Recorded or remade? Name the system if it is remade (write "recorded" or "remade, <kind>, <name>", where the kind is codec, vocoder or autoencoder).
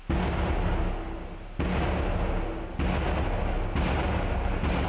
recorded